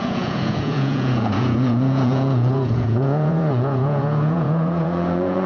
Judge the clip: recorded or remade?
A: remade